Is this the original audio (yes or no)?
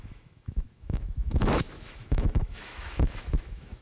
no